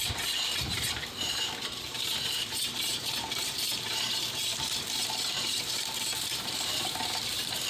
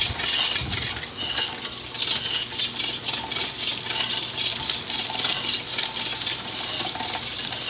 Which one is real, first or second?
second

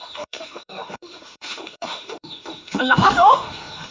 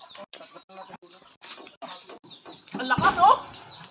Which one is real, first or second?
second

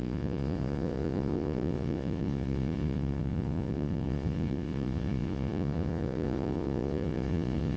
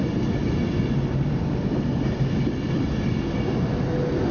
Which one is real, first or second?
second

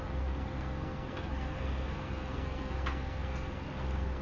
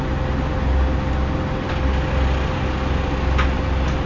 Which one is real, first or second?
second